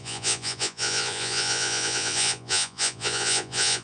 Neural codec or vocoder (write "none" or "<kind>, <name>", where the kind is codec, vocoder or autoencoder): vocoder, Vocos